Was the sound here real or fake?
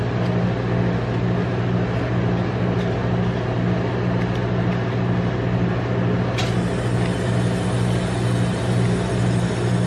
real